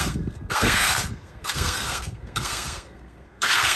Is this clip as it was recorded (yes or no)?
no